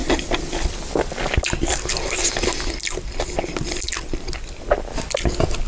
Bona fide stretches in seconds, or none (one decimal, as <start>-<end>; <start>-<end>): 0.0-5.7